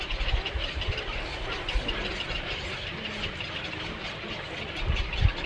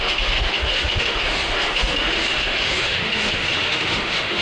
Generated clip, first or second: second